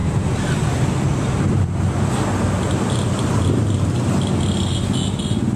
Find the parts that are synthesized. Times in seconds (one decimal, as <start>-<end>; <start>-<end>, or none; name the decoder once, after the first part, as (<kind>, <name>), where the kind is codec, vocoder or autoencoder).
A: none